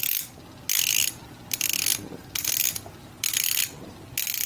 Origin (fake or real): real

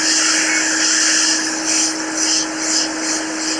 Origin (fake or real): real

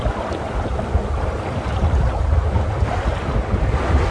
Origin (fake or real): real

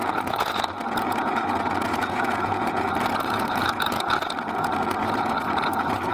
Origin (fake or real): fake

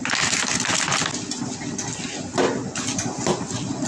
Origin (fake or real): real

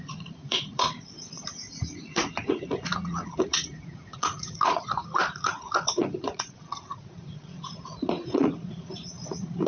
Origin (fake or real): fake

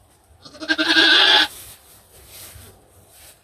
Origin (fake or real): real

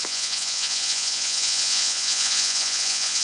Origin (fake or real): fake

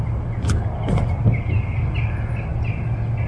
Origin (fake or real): real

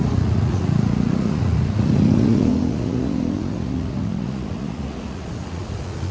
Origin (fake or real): fake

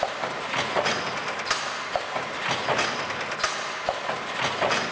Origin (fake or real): real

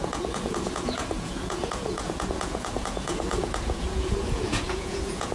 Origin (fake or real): fake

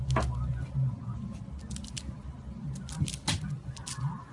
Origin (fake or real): real